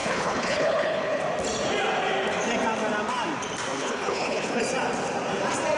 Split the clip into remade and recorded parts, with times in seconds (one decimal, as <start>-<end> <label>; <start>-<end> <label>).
0.0-1.2 remade; 1.2-3.8 recorded; 3.8-4.6 remade; 4.6-5.8 recorded